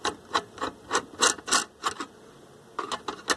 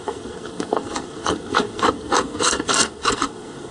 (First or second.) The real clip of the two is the first